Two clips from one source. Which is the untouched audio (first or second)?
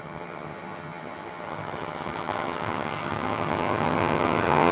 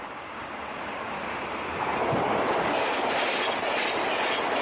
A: second